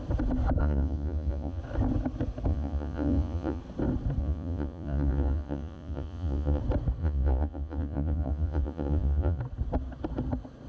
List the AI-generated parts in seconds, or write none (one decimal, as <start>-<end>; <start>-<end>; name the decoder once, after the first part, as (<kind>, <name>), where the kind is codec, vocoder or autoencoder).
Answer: 0.6-1.6 (vocoder, Vocos); 2.5-3.6; 4.2-6.6; 7.0-9.4